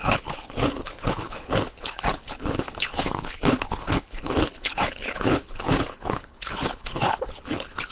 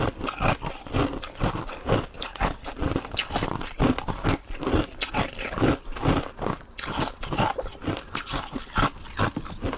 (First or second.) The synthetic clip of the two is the first